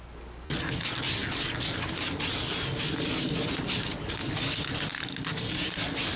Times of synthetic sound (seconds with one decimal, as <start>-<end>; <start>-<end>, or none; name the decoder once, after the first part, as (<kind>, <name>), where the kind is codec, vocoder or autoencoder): none